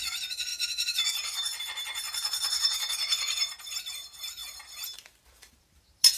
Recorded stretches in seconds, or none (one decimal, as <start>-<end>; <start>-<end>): 0.5-1.6; 4.4-5.5